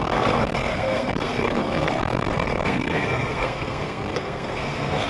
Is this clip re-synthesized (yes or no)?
yes